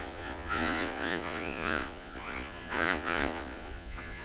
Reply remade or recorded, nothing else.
remade